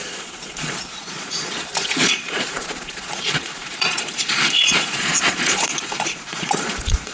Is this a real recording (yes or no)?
no